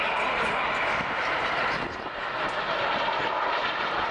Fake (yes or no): no